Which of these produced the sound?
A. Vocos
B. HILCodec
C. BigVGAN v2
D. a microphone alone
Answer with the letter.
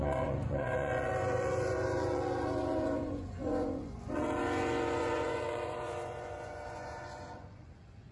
A